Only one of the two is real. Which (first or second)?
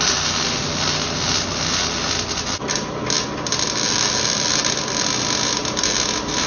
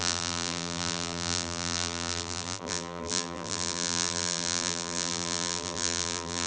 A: first